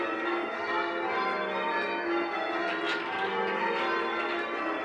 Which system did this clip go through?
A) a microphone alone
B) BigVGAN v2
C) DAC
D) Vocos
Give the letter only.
A